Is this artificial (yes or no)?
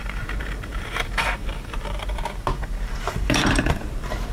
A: yes